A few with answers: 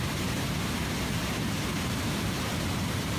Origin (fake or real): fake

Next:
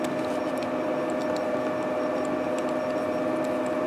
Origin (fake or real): real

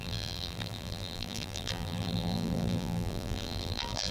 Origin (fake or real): fake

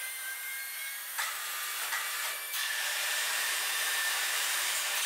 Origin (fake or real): fake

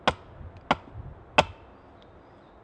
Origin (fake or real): real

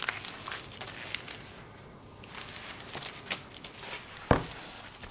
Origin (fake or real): real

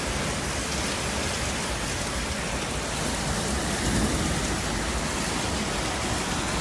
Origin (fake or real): real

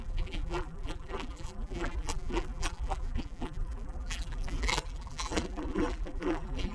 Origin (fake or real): fake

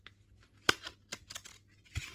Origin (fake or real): real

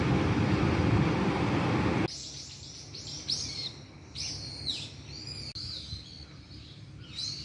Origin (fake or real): real